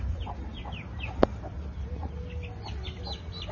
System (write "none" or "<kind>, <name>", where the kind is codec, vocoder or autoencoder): none